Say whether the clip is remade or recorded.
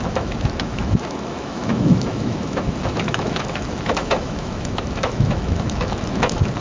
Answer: remade